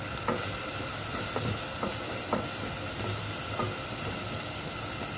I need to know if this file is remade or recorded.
recorded